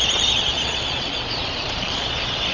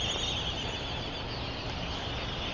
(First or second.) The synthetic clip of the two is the first